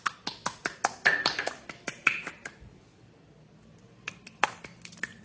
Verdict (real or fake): real